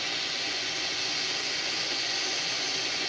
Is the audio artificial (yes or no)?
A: yes